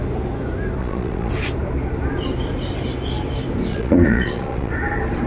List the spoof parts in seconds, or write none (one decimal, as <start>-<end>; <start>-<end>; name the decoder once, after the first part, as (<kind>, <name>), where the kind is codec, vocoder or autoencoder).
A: 0.8-1.3 (vocoder, Vocos); 3.7-4.7